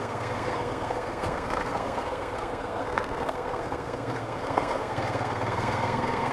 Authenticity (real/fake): fake